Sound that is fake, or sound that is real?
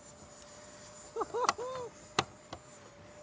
real